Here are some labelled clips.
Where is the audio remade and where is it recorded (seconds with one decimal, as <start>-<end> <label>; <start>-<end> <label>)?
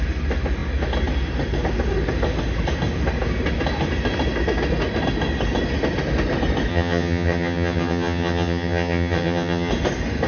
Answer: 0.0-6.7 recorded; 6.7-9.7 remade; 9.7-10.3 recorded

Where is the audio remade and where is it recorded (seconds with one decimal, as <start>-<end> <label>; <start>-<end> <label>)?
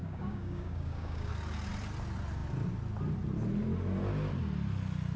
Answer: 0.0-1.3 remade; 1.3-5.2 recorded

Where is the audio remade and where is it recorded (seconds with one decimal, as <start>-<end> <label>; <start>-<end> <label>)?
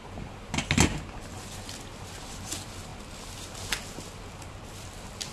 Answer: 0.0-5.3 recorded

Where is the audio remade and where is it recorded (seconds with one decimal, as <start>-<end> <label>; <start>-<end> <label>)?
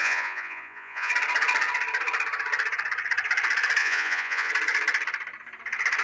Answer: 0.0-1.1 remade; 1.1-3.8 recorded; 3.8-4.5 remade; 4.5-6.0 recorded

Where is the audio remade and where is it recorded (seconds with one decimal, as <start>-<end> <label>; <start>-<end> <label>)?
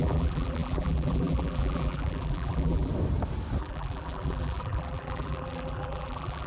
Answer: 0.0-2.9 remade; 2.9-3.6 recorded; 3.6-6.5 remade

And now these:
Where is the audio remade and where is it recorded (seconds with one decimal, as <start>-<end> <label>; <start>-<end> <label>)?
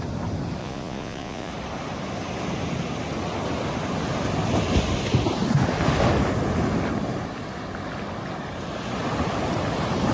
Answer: 0.0-0.6 recorded; 0.6-1.5 remade; 1.5-10.1 recorded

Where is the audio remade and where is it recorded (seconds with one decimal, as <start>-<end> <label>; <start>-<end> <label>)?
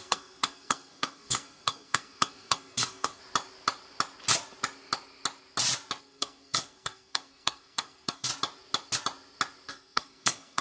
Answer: 0.0-3.2 remade; 3.2-6.0 recorded; 6.0-8.3 remade; 8.3-9.7 recorded; 9.7-10.6 remade